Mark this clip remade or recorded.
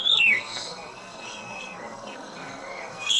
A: remade